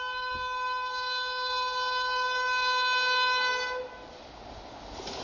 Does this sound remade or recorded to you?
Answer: recorded